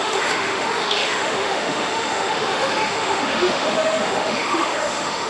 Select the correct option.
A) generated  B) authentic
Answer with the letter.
A